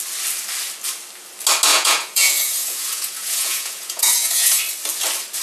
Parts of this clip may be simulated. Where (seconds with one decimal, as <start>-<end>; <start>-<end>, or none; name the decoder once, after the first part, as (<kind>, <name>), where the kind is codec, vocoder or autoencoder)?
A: 1.7-4.6 (vocoder, Vocos)